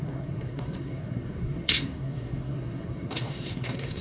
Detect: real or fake fake